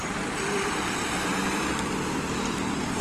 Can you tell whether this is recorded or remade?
recorded